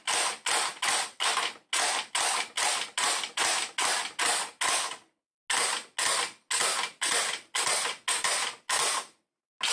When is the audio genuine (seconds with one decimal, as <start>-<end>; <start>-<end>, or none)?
0.0-9.7